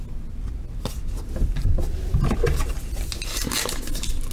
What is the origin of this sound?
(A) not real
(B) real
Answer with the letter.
B